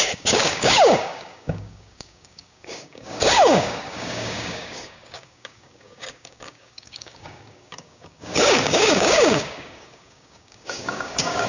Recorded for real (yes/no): no